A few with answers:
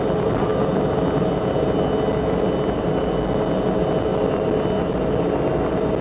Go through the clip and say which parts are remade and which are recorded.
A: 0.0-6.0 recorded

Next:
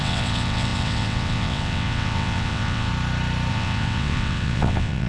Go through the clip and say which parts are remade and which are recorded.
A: 0.0-2.9 remade; 2.9-3.5 recorded; 3.5-5.1 remade